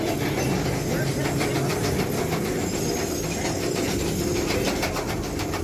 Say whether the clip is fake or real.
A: real